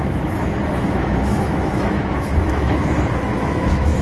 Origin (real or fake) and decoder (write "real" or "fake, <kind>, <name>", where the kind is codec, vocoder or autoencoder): fake, autoencoder, DAC-VAE